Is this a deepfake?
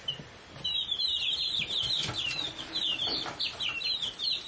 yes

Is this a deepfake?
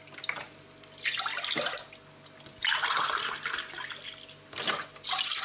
no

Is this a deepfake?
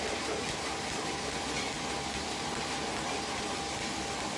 no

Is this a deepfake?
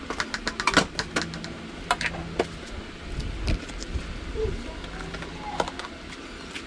no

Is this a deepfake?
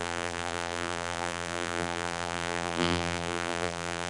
yes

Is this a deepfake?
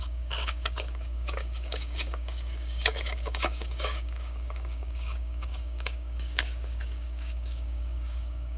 yes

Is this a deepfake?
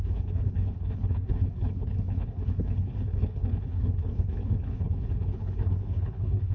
yes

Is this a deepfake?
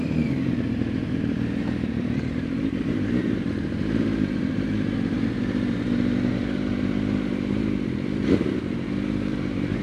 yes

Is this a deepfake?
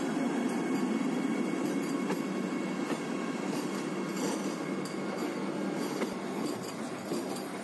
no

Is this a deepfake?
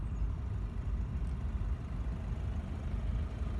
no